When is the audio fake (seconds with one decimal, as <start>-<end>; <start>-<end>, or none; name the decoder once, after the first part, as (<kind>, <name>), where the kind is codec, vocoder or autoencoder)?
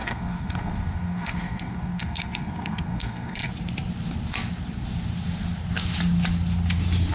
0.0-3.5 (codec, SNAC)